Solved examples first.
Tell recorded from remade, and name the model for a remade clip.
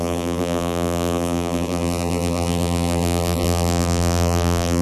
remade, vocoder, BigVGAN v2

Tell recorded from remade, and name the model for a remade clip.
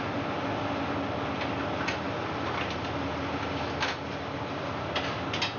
recorded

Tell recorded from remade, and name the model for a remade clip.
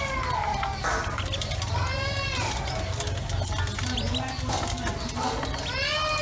recorded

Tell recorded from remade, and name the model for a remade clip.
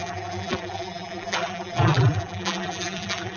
remade, vocoder, BigVGAN v2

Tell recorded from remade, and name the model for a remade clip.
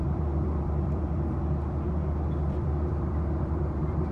remade, vocoder, BigVGAN v2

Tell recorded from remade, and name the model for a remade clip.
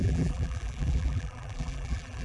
remade, vocoder, BigVGAN v2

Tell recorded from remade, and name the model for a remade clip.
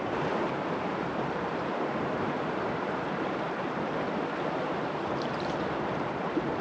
remade, vocoder, BigVGAN v2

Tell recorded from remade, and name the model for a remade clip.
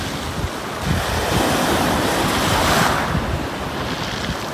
recorded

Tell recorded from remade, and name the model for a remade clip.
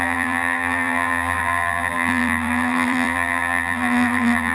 remade, vocoder, BigVGAN v2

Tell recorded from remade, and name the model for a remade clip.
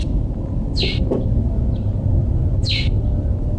remade, vocoder, BigVGAN v2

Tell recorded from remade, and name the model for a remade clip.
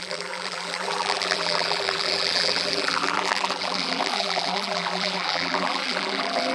remade, vocoder, BigVGAN v2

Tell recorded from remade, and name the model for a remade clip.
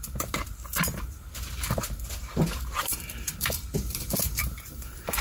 remade, vocoder, BigVGAN v2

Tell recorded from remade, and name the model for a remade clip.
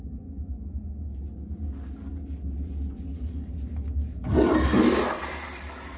recorded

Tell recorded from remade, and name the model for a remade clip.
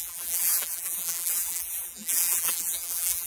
remade, vocoder, BigVGAN v2